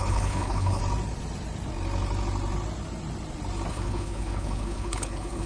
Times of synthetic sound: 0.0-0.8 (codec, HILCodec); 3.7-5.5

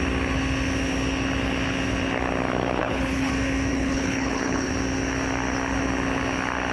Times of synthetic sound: 2.8-3.3 (codec, HILCodec); 3.7-4.7

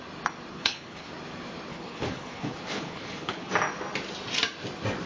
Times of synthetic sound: 0.5-1.1 (codec, HILCodec); 1.7-3.5

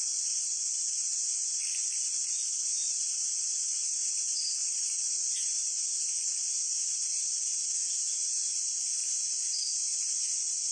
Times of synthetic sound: none